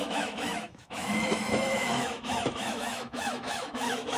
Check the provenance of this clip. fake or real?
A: fake